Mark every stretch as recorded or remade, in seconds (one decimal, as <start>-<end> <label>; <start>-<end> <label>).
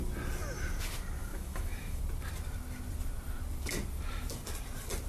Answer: 0.0-1.2 recorded; 1.2-2.0 remade; 2.0-5.1 recorded